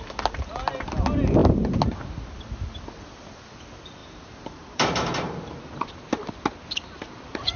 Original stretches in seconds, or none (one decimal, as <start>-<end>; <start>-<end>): 0.0-4.0; 5.9-7.6